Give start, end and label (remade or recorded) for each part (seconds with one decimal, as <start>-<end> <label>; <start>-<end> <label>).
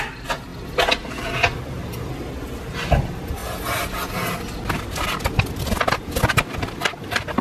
0.0-7.4 recorded